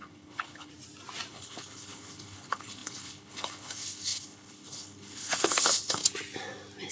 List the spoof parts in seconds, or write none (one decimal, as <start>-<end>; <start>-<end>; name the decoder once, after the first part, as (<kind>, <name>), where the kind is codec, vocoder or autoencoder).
0.0-0.7 (codec, HILCodec); 1.3-6.0